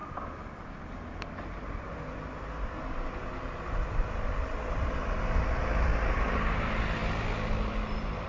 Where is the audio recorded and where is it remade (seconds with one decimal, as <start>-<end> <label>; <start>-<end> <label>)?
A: 0.0-8.3 recorded